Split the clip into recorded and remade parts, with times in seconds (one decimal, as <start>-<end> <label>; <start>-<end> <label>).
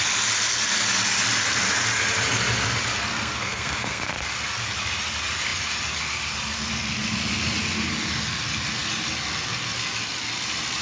0.0-3.1 recorded; 3.1-4.1 remade; 4.1-10.8 recorded